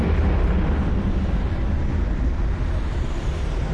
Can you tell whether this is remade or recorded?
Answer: recorded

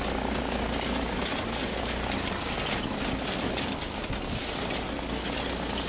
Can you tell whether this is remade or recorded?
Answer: recorded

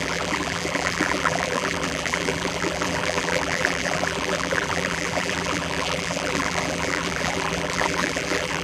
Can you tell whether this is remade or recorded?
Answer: remade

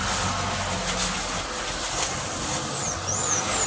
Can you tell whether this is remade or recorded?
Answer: recorded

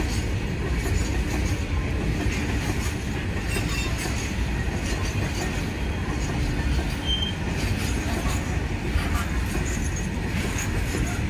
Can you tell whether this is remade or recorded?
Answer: recorded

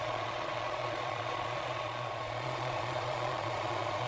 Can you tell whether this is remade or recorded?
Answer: remade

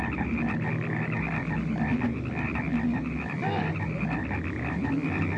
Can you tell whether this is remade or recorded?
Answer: recorded